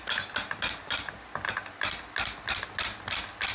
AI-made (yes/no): no